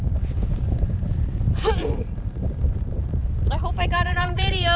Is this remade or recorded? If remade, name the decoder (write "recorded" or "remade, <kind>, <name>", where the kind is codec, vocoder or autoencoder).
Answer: remade, vocoder, BigVGAN v2